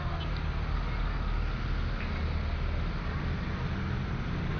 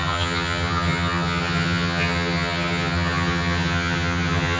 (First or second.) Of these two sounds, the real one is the first